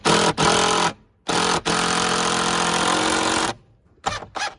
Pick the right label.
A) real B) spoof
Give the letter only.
A